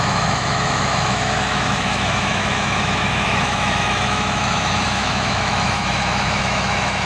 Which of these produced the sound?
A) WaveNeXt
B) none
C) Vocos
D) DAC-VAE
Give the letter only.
D